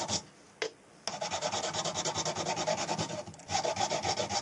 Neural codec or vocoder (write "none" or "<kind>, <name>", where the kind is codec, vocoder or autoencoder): none